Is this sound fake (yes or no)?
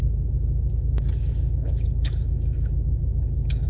yes